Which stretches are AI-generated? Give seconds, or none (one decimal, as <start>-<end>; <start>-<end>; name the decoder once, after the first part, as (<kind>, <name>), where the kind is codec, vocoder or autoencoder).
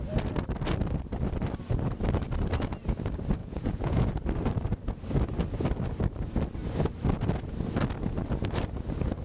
3.4-4.1 (vocoder, Vocos)